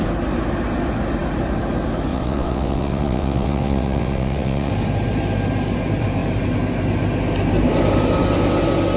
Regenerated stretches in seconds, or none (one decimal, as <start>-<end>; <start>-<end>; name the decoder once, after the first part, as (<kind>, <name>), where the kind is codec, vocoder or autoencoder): 2.1-4.7 (vocoder, WaveNeXt)